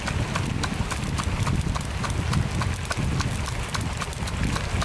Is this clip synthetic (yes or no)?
no